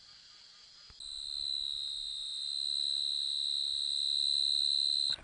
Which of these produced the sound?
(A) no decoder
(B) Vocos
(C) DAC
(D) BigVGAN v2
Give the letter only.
A